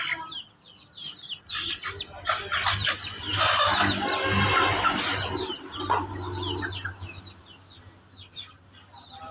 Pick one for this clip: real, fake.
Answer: real